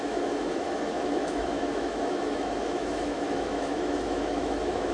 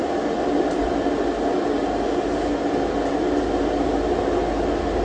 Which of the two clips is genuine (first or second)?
second